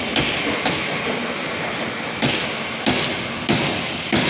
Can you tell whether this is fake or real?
real